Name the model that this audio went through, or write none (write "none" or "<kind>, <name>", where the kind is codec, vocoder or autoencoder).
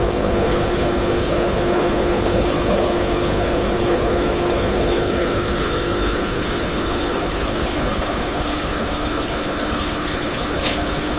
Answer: codec, HILCodec